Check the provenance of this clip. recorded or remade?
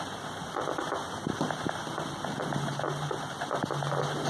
recorded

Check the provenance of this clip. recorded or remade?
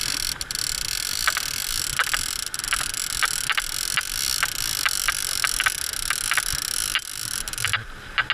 recorded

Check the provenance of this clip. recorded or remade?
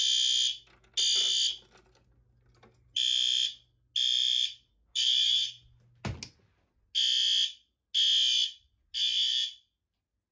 recorded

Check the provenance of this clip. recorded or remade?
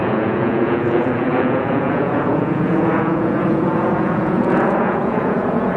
remade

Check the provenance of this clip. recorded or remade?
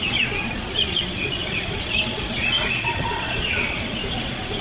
remade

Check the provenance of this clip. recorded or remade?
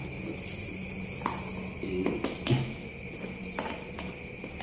recorded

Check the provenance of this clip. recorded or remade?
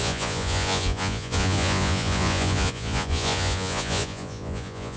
remade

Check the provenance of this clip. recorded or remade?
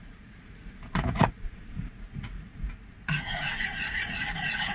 remade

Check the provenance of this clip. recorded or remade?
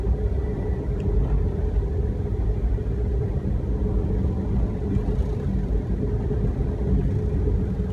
recorded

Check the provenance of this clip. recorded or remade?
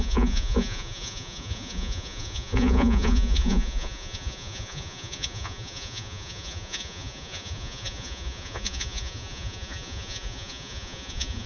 remade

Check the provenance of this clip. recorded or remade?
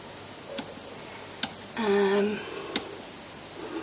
recorded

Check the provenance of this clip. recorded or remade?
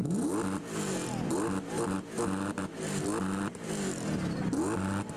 recorded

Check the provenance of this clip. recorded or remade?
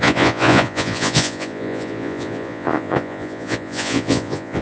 remade